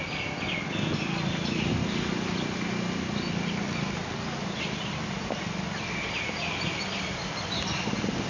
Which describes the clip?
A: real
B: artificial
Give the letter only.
A